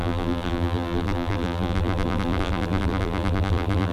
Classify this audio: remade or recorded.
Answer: remade